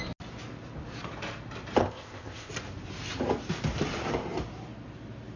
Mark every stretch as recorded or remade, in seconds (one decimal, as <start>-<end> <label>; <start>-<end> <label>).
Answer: 0.0-1.8 recorded; 1.8-2.5 remade; 2.5-5.4 recorded